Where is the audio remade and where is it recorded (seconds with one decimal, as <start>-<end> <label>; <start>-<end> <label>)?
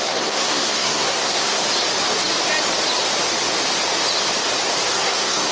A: 0.0-1.6 remade; 1.6-4.9 recorded; 4.9-5.5 remade